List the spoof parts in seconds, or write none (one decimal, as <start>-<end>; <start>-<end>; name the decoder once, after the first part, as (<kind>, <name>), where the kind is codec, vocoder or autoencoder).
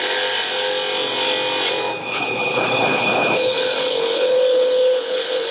2.0-5.5 (codec, HILCodec)